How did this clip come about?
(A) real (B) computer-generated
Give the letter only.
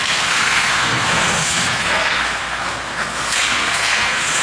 B